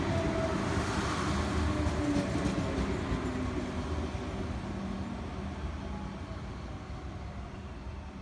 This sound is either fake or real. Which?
real